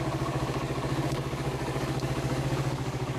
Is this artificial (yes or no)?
yes